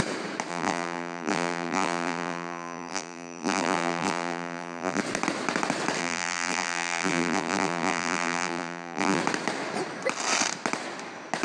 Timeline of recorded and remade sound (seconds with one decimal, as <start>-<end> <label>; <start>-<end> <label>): 0.0-0.5 recorded; 0.5-5.0 remade; 5.0-6.0 recorded; 6.0-9.2 remade; 9.2-11.4 recorded